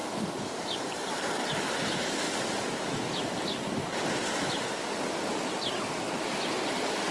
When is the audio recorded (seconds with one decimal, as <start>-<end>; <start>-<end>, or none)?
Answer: 0.0-7.1